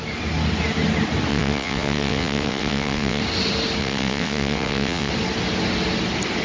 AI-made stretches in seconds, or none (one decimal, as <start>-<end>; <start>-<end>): 1.3-3.2; 3.8-5.1